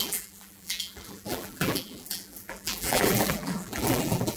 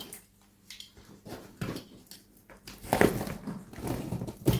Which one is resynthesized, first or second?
first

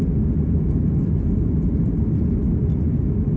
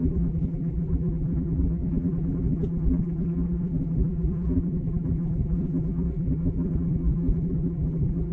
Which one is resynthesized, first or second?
second